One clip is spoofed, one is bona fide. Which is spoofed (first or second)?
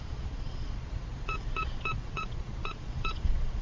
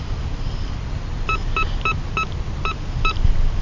first